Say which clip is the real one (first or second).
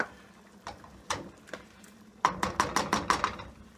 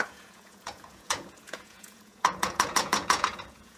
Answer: first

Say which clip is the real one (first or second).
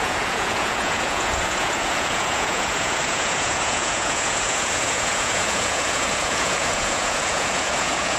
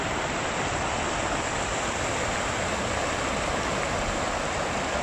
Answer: second